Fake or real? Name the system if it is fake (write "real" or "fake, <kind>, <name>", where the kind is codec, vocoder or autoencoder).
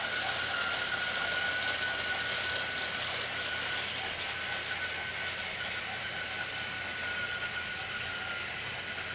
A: real